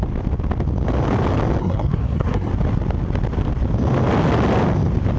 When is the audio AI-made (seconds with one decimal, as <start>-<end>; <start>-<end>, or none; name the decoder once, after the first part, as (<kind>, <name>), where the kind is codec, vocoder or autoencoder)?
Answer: 1.6-2.5 (codec, SNAC)